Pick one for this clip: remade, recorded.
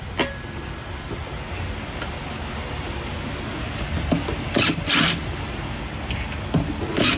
recorded